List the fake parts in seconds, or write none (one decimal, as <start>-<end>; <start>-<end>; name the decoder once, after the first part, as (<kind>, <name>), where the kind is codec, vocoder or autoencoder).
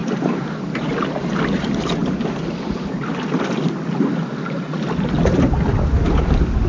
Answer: none